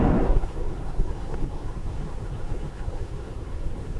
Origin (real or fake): fake